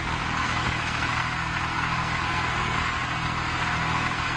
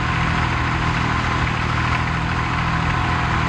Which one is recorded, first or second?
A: second